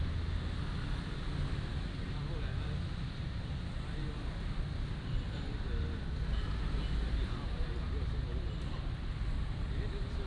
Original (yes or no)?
yes